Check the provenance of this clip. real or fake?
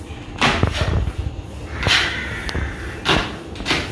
real